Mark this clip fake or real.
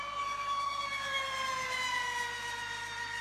real